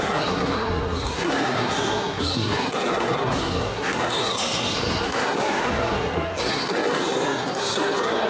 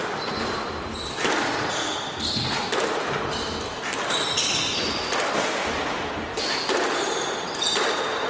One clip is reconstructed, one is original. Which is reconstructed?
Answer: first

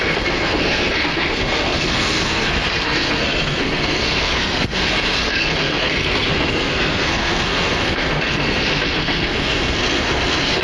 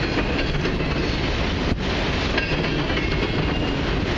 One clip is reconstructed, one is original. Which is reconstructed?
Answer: first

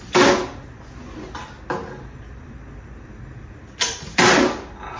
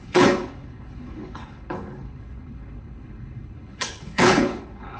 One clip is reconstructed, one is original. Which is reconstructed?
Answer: second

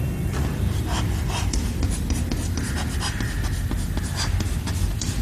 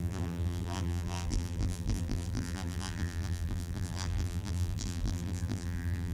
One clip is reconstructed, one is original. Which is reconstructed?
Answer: second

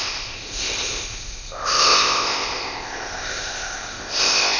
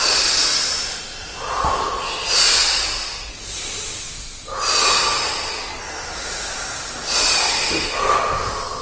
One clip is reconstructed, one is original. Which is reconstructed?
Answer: first